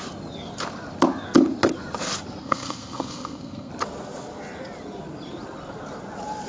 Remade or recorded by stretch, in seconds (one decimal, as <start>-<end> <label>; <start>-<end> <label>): 0.0-2.4 recorded; 2.4-3.7 remade; 3.7-6.5 recorded